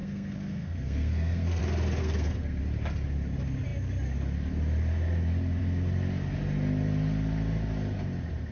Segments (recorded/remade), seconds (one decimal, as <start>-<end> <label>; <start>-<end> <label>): 0.0-1.6 remade; 1.6-2.0 recorded; 2.0-2.6 remade; 2.6-8.5 recorded